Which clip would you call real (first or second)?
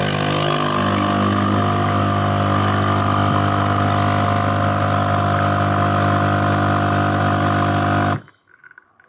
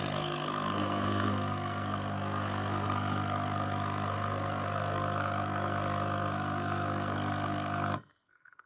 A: first